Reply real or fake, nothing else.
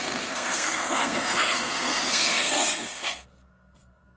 fake